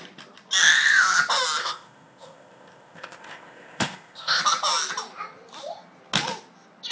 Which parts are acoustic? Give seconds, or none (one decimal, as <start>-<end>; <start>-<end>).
0.0-1.6; 4.4-6.9